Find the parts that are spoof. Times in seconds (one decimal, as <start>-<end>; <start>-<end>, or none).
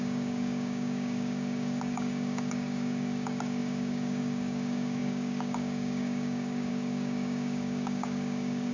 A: 0.0-8.7